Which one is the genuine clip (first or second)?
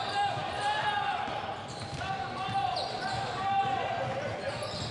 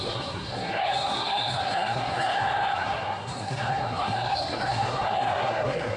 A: first